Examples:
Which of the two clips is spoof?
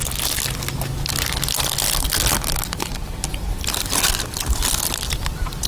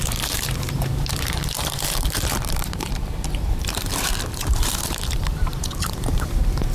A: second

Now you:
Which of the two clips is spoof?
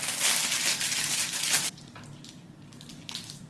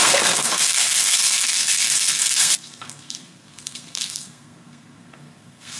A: second